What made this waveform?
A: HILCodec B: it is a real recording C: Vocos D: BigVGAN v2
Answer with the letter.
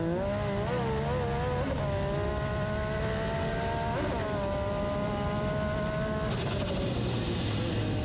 B